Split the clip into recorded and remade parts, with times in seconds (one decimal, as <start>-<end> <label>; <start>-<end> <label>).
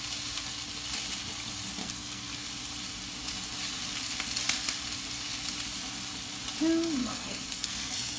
0.0-1.8 recorded; 1.8-2.5 remade; 2.5-7.0 recorded; 7.0-8.2 remade